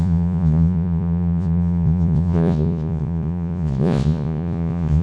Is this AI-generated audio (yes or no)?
yes